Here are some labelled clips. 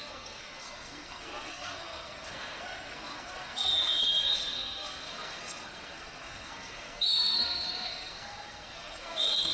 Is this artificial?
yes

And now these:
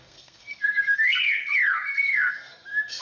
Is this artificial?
yes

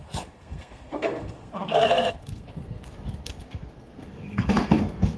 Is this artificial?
yes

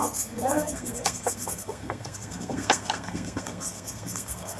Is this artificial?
yes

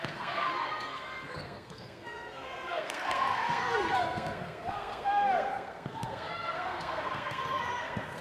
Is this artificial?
yes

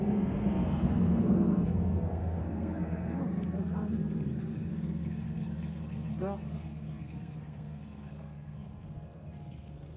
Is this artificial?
yes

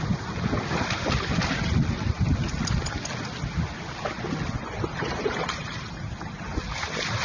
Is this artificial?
no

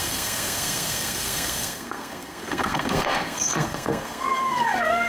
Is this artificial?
yes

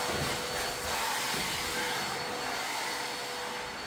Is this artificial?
no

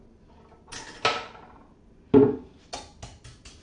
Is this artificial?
no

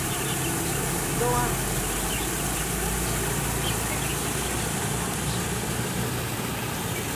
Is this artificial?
no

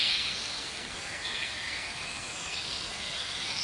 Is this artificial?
yes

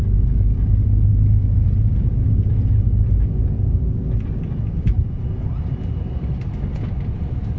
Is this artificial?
no